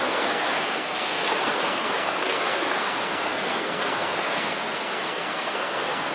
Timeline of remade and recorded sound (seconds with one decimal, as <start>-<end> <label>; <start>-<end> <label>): 0.0-6.1 remade